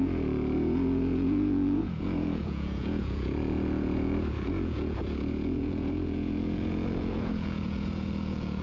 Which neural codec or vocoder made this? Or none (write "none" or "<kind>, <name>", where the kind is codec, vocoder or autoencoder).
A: vocoder, Vocos